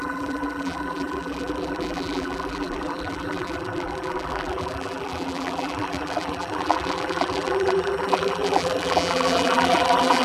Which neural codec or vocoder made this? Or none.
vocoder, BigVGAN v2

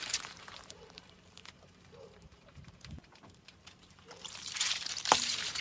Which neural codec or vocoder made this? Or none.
vocoder, BigVGAN v2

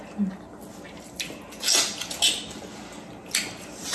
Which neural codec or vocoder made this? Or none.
none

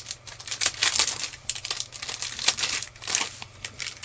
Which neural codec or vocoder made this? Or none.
vocoder, BigVGAN v2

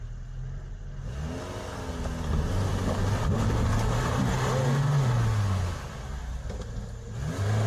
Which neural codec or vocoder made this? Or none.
none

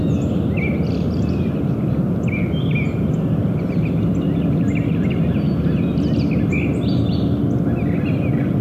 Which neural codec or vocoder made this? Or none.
none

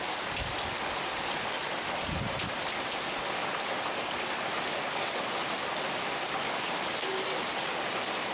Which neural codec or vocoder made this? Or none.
none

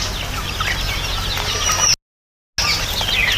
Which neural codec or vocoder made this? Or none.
none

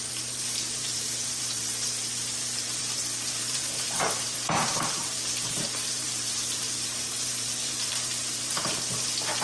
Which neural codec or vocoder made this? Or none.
vocoder, BigVGAN v2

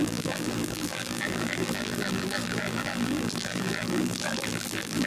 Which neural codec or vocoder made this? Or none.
vocoder, BigVGAN v2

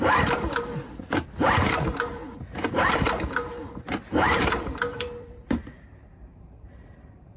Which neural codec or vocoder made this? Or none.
vocoder, BigVGAN v2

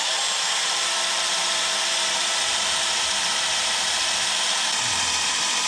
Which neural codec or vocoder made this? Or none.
vocoder, BigVGAN v2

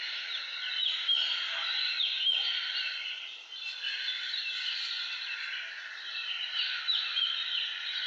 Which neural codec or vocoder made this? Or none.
none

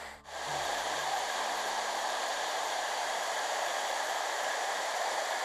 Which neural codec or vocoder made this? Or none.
vocoder, BigVGAN v2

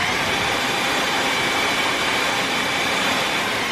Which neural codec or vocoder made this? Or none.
vocoder, BigVGAN v2